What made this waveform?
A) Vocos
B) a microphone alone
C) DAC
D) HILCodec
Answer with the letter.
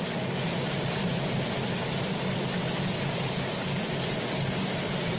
B